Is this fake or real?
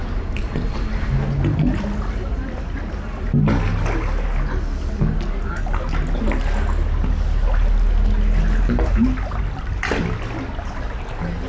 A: real